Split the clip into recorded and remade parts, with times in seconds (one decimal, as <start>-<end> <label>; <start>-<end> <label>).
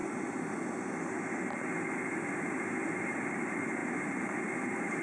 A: 0.0-3.0 recorded; 3.0-5.0 remade